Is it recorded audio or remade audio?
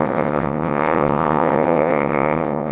remade